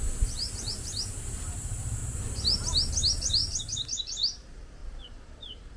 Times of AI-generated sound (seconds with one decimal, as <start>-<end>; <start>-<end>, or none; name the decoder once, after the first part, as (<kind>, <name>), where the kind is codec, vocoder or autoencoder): 0.0-2.0 (vocoder, BigVGAN v2); 2.9-3.4; 4.0-4.8